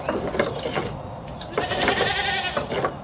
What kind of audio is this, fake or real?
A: real